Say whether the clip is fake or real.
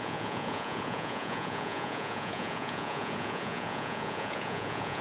fake